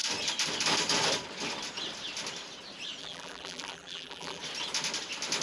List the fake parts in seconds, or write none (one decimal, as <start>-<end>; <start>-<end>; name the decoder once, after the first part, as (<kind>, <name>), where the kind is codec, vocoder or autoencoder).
3.0-4.4 (vocoder, BigVGAN v2)